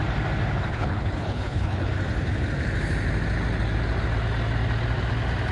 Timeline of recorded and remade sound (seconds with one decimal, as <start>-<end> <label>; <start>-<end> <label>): 0.0-0.7 recorded; 0.7-1.9 remade; 1.9-5.5 recorded